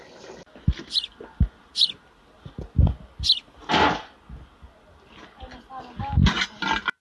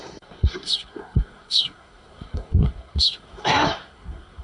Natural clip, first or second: first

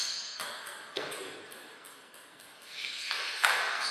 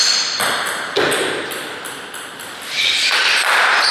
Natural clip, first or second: second